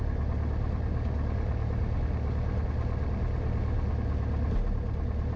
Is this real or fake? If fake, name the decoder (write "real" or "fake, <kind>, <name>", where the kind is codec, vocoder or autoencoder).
real